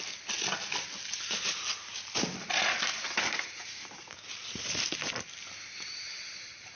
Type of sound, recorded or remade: recorded